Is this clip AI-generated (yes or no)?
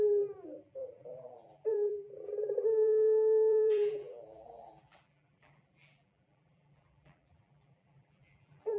yes